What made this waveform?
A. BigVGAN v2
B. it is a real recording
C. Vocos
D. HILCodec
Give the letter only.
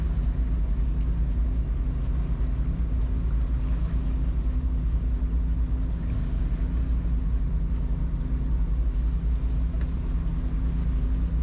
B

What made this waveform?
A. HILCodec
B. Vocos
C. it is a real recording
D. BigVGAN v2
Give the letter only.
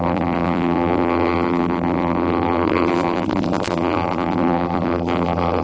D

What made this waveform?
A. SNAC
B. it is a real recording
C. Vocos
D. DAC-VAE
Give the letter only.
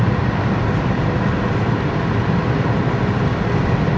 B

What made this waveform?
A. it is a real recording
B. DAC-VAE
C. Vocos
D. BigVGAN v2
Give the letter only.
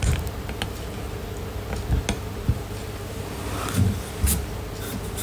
A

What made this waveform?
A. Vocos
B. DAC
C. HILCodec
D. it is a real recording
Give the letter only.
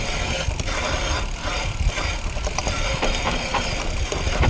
D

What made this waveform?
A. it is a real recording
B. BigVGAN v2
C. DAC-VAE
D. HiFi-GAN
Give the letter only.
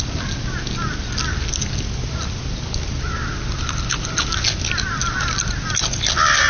A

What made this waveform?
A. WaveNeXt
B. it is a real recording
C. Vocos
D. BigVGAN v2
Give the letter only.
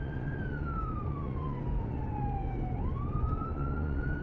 C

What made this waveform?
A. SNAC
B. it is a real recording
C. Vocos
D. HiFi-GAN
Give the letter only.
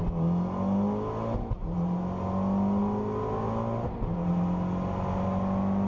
B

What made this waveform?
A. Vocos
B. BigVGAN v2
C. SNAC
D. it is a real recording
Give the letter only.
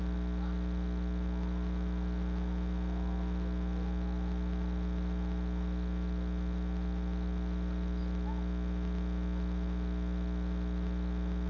D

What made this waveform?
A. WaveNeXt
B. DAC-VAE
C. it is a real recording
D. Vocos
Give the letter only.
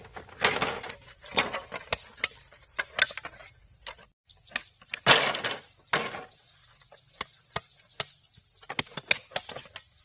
C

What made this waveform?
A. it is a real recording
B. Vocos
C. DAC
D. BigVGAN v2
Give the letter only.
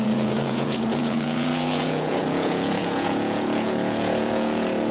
B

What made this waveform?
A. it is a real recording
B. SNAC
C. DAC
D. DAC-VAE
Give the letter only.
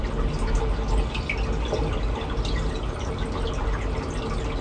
A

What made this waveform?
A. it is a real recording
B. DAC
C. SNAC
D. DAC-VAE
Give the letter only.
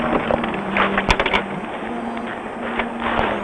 A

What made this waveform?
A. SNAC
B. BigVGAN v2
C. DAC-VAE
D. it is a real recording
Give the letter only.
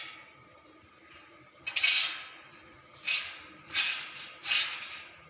D